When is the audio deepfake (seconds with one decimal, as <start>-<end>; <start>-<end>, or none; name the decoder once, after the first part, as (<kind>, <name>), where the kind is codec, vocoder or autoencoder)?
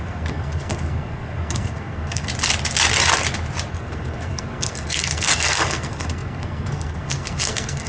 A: 0.0-2.3 (codec, SNAC); 3.7-7.9